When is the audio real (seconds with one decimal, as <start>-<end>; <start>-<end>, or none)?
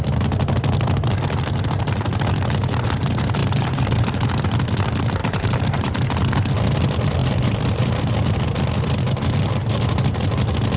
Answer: 0.0-3.4; 4.3-5.2; 6.5-7.2; 8.1-10.8